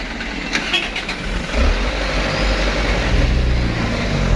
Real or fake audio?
real